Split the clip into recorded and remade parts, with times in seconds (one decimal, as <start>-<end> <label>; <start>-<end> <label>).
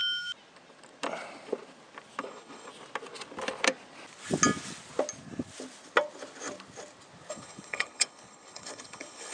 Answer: 0.0-2.2 recorded; 2.2-2.7 remade; 2.7-7.3 recorded; 7.3-9.3 remade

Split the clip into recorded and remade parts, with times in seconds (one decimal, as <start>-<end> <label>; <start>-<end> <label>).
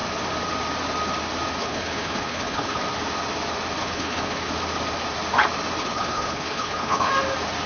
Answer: 0.0-1.6 recorded; 1.6-2.8 remade; 2.8-3.8 recorded; 3.8-4.5 remade; 4.5-5.8 recorded; 5.8-7.1 remade; 7.1-7.7 recorded